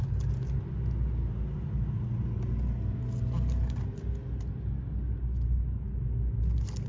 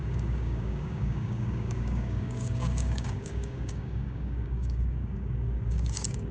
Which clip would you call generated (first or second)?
second